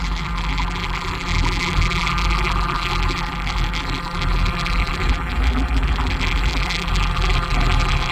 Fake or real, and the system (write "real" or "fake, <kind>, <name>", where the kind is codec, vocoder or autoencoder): fake, vocoder, BigVGAN v2